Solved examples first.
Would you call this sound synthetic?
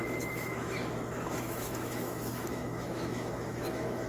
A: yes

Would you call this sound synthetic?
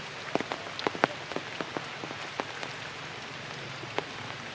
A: no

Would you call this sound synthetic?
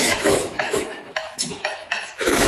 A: yes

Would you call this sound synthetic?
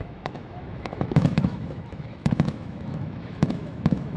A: yes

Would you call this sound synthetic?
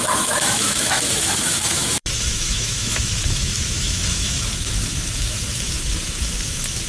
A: yes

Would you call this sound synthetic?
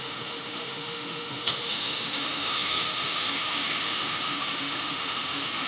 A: yes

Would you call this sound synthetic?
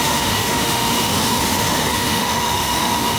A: yes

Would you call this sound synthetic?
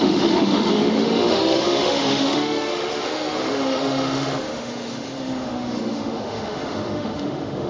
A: yes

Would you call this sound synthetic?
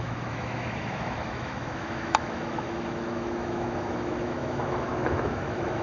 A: yes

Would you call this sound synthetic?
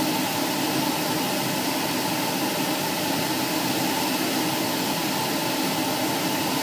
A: no